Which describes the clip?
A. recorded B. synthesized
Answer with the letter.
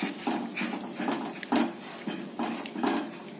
A